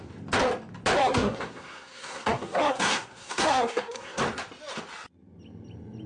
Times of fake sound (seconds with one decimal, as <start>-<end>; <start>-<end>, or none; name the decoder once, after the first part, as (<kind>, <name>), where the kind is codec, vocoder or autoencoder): 1.0-4.2 (codec, SNAC)